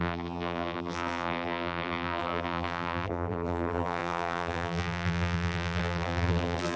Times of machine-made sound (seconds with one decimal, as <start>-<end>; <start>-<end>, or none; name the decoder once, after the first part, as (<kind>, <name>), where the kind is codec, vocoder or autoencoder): 0.0-6.8 (vocoder, BigVGAN v2)